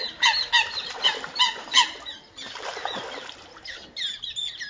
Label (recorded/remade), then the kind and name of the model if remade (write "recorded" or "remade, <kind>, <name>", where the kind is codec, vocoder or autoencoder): recorded